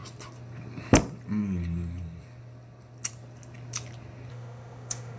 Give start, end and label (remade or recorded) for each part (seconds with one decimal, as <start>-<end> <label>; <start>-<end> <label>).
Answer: 0.0-4.3 recorded; 4.3-5.2 remade